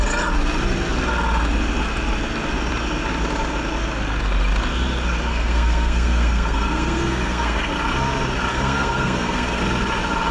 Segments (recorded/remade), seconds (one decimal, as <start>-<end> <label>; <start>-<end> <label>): 0.0-5.3 recorded; 5.3-7.7 remade; 7.7-8.5 recorded; 8.5-9.6 remade; 9.6-10.3 recorded